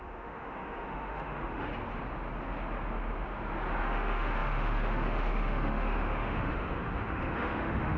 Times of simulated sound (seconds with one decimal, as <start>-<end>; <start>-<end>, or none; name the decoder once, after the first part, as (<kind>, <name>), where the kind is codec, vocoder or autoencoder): 0.0-1.7 (autoencoder, DAC-VAE); 3.8-8.0